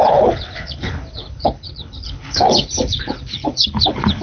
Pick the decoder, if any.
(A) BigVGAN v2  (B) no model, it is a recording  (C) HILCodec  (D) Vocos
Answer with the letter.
C